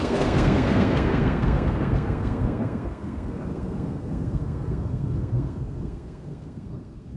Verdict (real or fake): fake